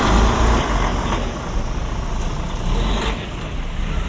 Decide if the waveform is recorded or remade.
recorded